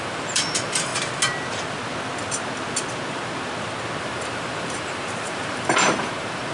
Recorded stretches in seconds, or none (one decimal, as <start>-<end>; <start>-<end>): 0.9-4.0